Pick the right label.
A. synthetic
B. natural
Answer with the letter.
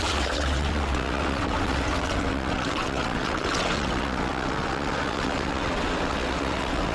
A